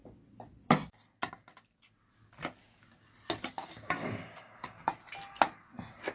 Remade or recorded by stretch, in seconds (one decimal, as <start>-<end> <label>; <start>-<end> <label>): 0.0-3.6 recorded; 3.6-4.9 remade; 4.9-6.1 recorded